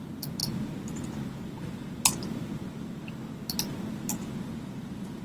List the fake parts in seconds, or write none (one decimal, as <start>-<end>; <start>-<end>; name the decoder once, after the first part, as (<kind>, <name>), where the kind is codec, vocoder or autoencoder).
4.1-5.2 (vocoder, Vocos)